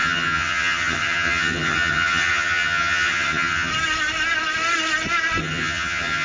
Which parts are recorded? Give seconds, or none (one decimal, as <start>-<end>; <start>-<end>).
3.7-5.4